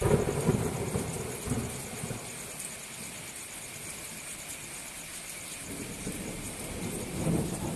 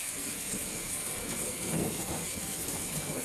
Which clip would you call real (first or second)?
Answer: first